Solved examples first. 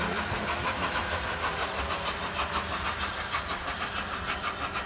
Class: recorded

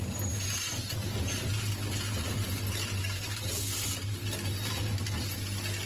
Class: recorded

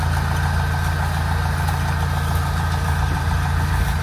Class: recorded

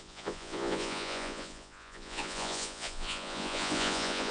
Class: remade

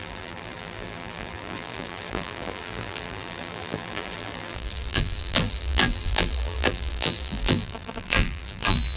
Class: remade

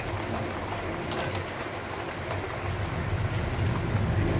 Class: remade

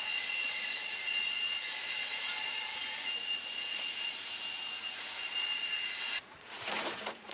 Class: remade